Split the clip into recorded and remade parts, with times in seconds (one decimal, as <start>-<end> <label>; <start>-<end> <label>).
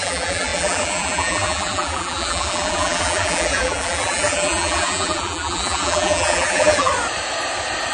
0.0-6.9 remade; 6.9-7.9 recorded